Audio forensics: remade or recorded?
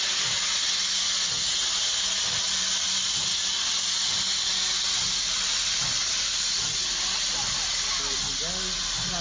recorded